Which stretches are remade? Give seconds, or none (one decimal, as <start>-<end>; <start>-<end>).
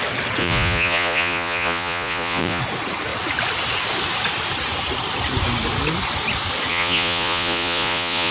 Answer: 0.4-2.6; 6.7-8.3